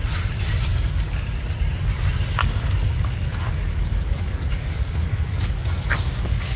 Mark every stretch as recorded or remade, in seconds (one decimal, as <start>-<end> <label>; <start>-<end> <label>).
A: 0.0-0.7 recorded; 0.7-1.3 remade; 1.3-2.4 recorded; 2.4-6.6 remade